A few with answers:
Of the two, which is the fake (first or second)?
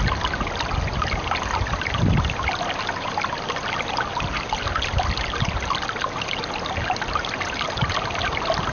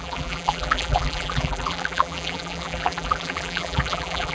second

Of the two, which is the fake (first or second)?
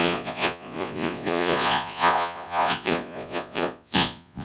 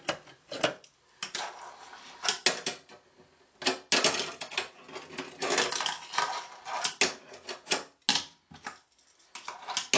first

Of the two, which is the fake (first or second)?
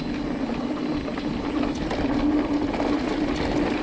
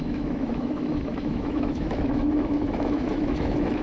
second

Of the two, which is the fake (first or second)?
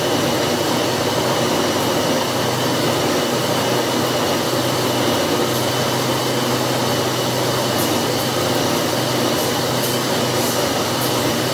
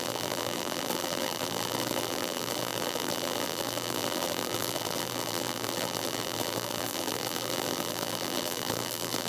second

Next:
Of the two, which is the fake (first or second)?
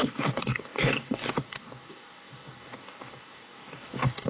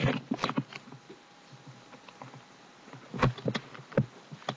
first